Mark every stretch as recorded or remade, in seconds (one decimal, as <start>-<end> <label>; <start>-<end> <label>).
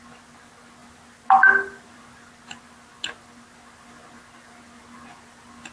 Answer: 0.0-5.7 recorded